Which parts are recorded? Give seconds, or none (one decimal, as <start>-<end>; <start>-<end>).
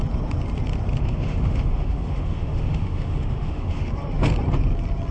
0.0-1.0; 3.9-5.1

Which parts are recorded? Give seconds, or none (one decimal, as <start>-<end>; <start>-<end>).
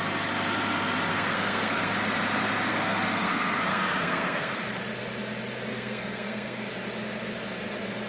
0.0-1.1; 1.9-2.7; 4.6-5.7; 6.7-8.1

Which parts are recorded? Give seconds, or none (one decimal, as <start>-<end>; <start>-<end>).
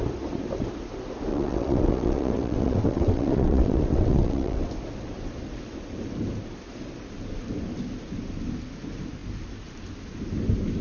0.0-1.3; 4.7-10.8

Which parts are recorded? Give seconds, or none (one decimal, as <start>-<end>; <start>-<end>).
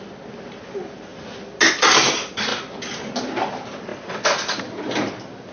0.0-5.5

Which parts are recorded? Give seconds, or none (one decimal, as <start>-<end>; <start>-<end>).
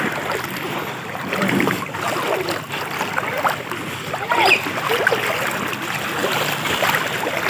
0.0-7.5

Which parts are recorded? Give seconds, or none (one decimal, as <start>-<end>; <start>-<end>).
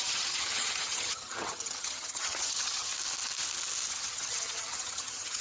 2.9-3.9